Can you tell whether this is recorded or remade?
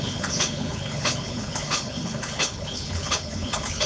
remade